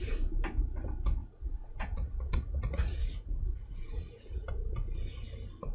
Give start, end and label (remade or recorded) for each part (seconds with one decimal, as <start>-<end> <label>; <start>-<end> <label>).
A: 0.0-1.2 recorded; 1.2-4.5 remade; 4.5-5.7 recorded